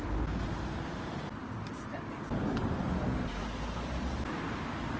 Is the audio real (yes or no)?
yes